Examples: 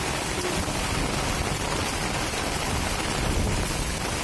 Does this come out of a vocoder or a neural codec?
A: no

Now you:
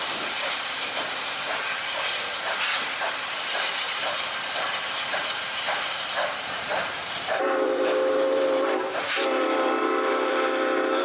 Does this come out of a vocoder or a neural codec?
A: yes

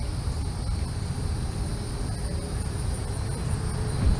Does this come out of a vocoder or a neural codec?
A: yes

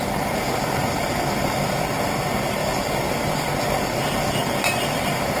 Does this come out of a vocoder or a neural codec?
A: no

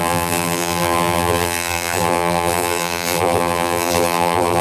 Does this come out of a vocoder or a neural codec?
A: yes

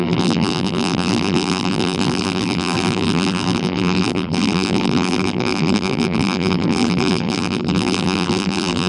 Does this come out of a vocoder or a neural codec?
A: yes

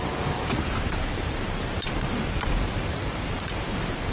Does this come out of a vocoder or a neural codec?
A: yes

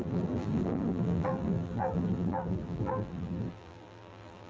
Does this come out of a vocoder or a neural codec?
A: yes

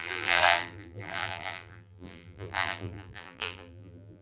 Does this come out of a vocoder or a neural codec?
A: yes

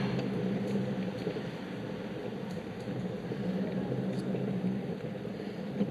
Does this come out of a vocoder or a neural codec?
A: no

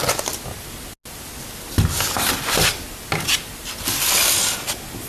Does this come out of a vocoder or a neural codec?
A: no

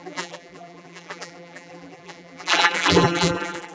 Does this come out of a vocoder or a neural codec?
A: yes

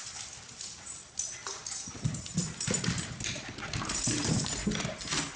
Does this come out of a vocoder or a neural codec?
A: no